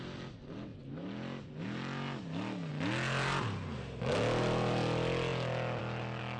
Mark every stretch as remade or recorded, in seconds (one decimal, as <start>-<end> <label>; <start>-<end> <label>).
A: 0.0-6.4 recorded